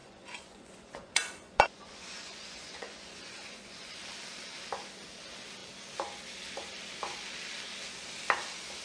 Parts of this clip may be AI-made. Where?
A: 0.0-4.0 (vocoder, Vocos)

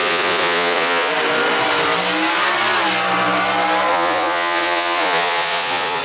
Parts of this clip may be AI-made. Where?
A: 0.0-1.1 (vocoder, Vocos); 3.9-6.0

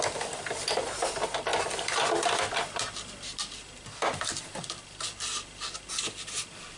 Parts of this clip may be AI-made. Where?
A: none

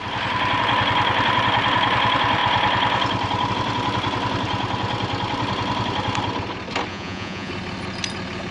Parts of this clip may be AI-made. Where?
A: 6.9-7.5 (vocoder, Vocos)

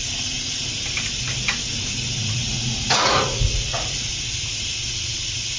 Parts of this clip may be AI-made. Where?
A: 2.2-4.1 (vocoder, Vocos)

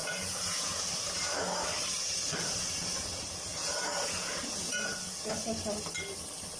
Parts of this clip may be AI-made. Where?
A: 0.0-0.9 (vocoder, Vocos); 3.5-5.3

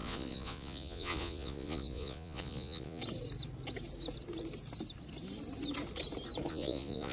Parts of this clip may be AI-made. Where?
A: 0.0-3.0 (vocoder, Vocos); 6.5-7.1

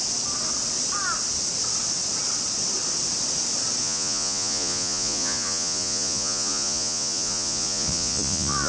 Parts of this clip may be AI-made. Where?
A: 3.8-8.7 (vocoder, Vocos)